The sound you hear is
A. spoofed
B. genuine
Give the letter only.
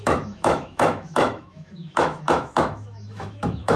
A